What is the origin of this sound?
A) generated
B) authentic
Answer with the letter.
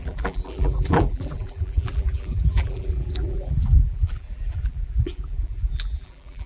A